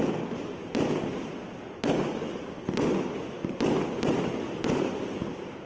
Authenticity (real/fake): real